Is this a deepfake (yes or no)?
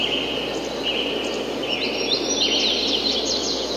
no